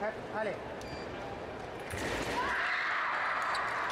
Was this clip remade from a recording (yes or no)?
no